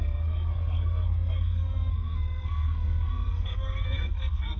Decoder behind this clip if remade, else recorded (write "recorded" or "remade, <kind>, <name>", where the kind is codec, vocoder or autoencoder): remade, codec, SNAC